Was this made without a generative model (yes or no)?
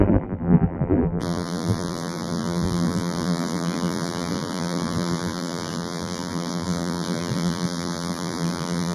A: no